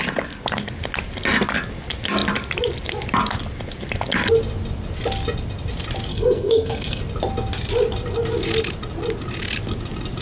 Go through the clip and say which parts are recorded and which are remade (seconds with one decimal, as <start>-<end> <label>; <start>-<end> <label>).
0.0-6.1 recorded; 6.1-7.0 remade; 7.0-10.2 recorded